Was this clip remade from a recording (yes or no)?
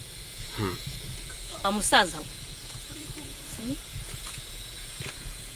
yes